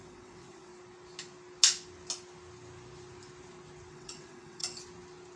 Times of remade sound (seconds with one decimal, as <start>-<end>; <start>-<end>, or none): 0.0-0.7; 3.9-4.6